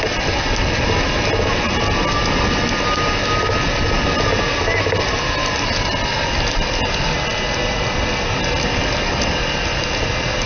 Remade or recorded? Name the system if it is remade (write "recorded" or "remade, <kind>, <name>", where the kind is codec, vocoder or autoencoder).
recorded